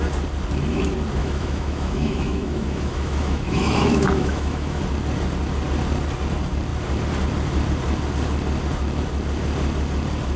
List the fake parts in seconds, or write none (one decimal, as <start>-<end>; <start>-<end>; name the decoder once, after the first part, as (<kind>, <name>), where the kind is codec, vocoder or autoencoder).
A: 1.2-4.8 (autoencoder, DAC-VAE)